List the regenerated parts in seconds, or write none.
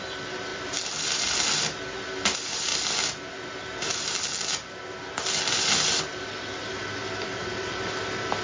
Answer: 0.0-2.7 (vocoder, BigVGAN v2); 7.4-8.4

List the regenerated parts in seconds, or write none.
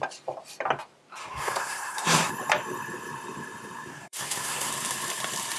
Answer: 1.2-2.3 (codec, SNAC); 3.9-4.7